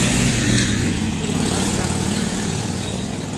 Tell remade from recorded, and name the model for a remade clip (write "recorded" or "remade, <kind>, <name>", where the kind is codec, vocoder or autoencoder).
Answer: remade, vocoder, Vocos